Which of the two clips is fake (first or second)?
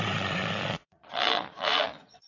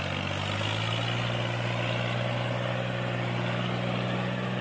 first